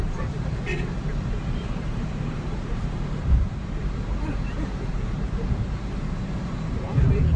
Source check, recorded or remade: remade